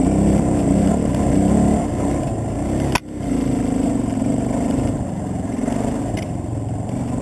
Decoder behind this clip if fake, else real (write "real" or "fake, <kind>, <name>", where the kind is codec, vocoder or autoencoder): real